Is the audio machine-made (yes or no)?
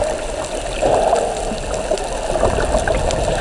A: no